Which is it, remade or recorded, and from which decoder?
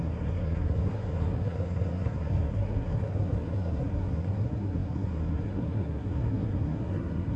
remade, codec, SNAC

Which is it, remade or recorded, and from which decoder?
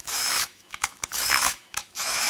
remade, autoencoder, DAC-VAE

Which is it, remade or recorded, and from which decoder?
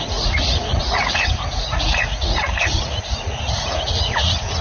remade, vocoder, Vocos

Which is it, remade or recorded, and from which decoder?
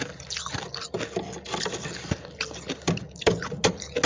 recorded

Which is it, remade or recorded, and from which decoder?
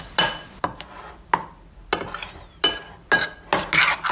recorded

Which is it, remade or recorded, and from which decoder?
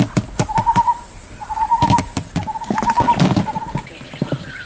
recorded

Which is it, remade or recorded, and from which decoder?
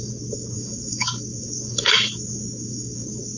remade, codec, DAC